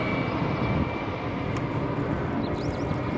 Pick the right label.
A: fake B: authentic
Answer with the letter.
B